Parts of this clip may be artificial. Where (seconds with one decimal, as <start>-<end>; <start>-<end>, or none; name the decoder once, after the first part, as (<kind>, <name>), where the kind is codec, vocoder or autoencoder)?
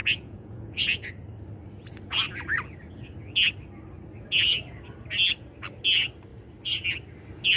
0.0-1.1 (vocoder, Vocos)